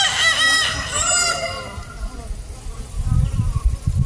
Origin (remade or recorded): recorded